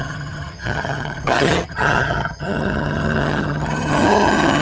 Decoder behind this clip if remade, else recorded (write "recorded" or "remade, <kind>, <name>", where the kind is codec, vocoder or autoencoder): remade, vocoder, HiFi-GAN